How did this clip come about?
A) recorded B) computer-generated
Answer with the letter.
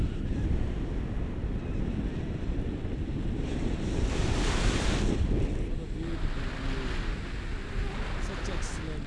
A